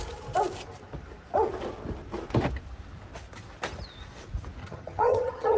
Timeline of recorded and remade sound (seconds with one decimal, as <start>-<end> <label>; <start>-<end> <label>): 0.0-4.6 recorded; 4.6-5.6 remade